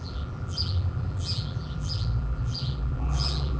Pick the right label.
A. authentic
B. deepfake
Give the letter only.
B